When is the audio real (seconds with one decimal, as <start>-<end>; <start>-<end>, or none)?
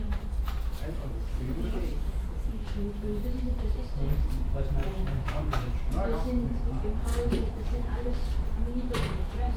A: 0.0-4.8; 5.9-7.1; 8.1-9.6